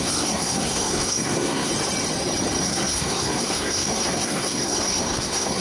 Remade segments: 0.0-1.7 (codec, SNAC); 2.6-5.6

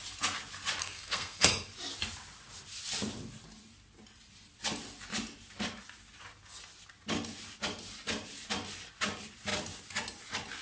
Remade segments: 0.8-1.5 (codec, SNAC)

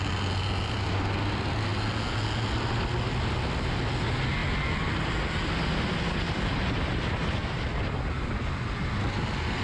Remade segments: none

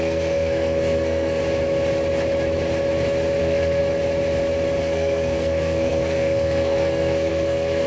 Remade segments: 0.0-1.4 (codec, SNAC); 3.4-3.8; 4.8-7.9

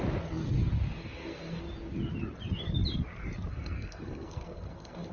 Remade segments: 1.0-1.6 (codec, SNAC); 3.5-5.1

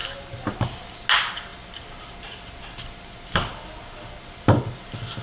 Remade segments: none